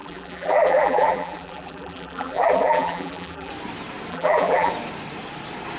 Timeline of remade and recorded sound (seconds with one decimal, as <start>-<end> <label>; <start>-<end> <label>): 0.0-3.5 remade; 3.5-4.1 recorded; 4.1-4.7 remade; 4.7-5.8 recorded